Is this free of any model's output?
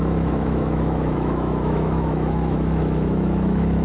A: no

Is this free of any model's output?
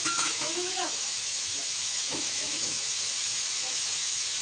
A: no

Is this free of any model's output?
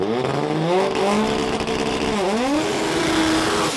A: yes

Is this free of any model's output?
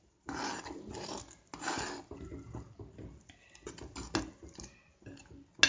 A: yes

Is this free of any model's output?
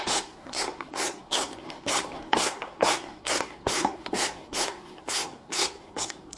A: no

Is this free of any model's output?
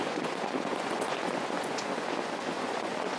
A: no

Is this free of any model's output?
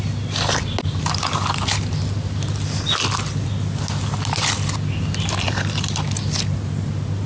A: yes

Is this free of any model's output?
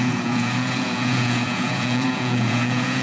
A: no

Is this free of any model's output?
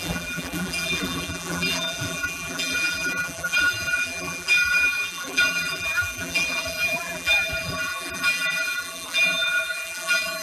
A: no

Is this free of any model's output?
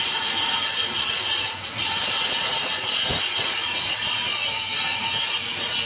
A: no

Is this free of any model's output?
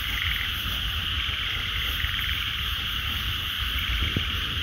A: yes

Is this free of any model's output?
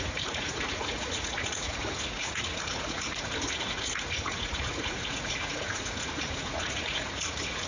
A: no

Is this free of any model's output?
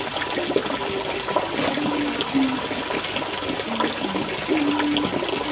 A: yes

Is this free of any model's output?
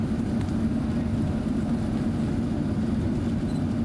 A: yes